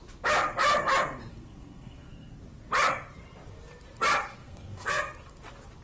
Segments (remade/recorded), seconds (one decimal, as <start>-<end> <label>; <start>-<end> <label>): 0.0-1.3 recorded; 1.3-2.4 remade; 2.4-4.4 recorded; 4.4-5.0 remade; 5.0-5.8 recorded